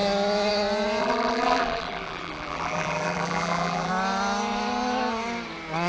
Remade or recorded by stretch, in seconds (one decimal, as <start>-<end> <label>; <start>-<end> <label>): 0.0-1.0 recorded; 1.0-3.9 remade; 3.9-5.9 recorded